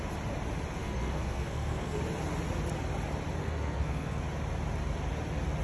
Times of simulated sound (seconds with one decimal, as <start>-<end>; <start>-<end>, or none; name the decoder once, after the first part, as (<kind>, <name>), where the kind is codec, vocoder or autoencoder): 0.8-2.0 (codec, SNAC); 3.4-4.2